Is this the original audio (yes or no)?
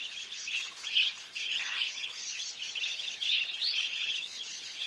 no